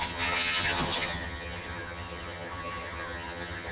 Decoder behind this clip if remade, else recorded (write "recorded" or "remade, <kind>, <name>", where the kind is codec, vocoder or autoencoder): remade, vocoder, HiFi-GAN